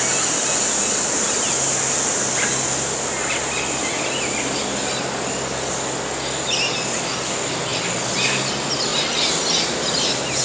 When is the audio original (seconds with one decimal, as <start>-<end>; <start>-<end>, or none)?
0.0-10.4